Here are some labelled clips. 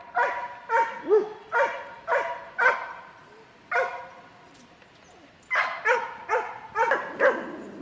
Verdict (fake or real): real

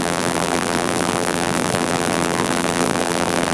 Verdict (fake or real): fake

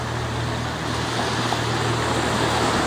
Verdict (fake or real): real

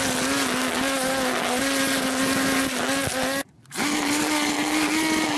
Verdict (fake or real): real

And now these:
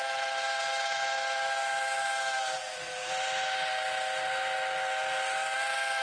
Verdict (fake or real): real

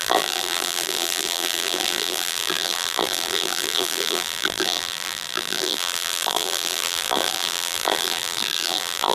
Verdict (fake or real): fake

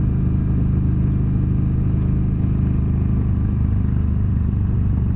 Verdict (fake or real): real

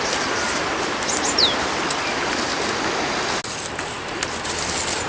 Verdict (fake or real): real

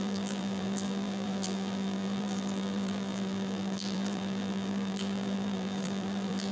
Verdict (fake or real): fake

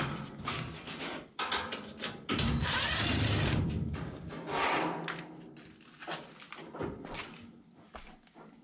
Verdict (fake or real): real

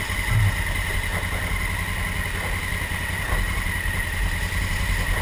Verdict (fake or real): real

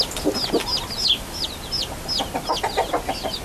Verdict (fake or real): real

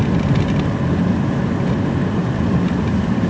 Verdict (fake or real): real